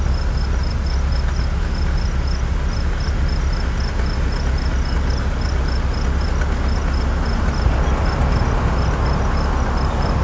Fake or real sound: real